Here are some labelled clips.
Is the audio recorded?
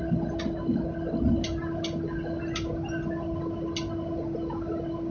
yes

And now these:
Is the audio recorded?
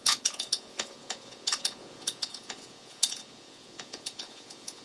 no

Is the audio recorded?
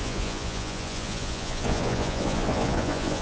no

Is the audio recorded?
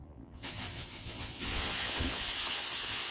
no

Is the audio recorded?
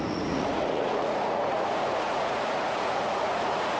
no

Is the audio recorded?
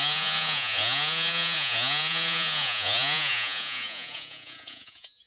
no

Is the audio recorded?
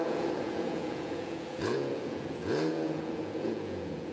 no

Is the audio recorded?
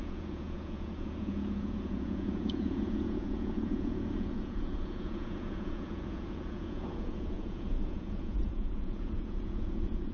no